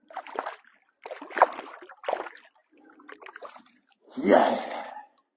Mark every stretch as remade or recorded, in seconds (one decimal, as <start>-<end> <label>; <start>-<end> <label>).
0.0-2.6 recorded; 2.6-4.6 remade; 4.6-5.4 recorded